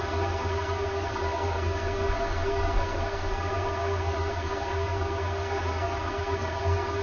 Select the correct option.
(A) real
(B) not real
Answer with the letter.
B